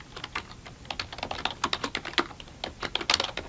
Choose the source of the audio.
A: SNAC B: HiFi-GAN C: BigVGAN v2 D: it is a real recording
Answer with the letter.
D